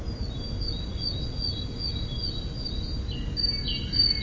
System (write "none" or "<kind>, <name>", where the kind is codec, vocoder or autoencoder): none